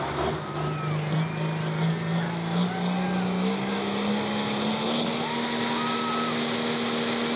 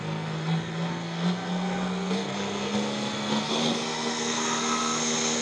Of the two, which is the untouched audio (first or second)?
first